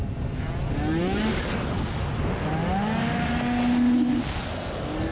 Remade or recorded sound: recorded